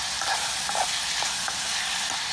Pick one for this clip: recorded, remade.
recorded